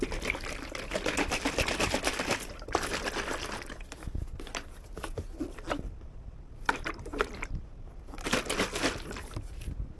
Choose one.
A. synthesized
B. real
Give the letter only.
B